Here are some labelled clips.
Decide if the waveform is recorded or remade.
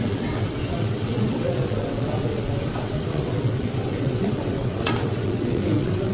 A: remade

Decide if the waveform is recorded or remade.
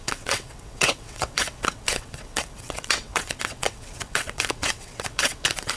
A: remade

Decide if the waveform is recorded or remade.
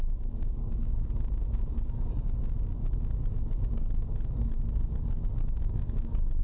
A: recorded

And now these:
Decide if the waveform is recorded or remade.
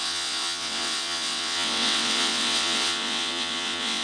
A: remade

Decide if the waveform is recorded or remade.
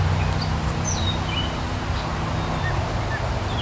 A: recorded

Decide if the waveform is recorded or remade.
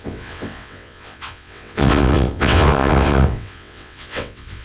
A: remade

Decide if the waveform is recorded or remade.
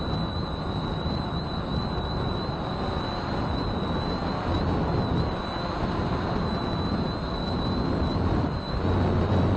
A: recorded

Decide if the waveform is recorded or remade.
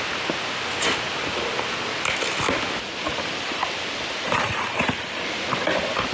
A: recorded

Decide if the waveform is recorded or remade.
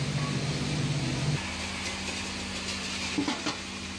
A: recorded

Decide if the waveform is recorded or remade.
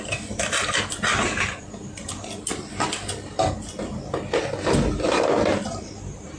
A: recorded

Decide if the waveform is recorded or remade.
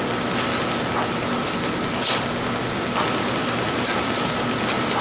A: recorded